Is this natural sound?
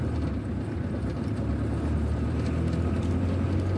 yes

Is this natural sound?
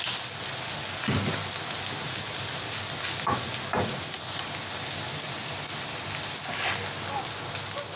yes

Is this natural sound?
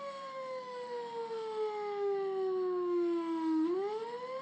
no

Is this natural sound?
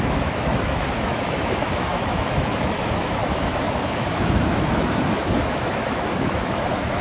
no